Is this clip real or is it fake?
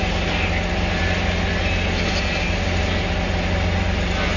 real